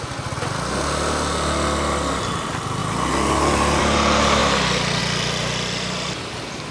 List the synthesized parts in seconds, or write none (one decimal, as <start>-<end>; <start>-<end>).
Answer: none